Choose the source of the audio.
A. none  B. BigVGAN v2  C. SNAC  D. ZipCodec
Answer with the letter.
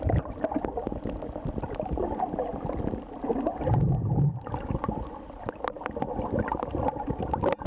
A